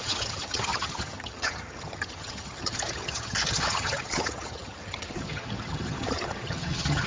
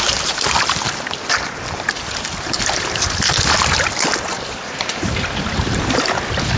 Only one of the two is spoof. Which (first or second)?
first